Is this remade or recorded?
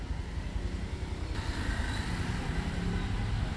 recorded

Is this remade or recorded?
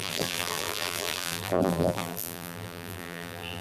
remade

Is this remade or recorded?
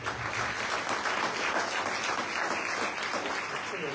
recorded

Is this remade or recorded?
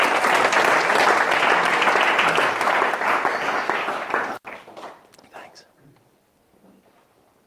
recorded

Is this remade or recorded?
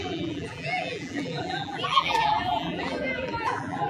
remade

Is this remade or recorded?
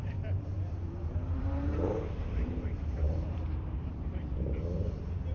remade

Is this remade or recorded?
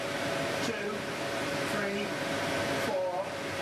remade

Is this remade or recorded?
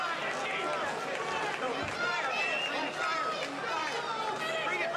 recorded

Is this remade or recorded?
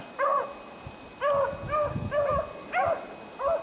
recorded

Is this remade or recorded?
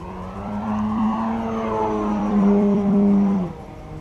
remade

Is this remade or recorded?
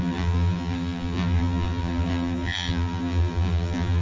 remade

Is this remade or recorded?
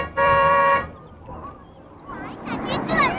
remade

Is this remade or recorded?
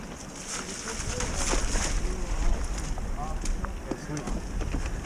recorded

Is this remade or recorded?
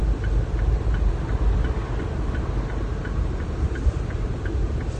recorded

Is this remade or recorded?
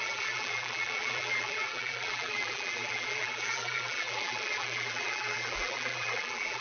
remade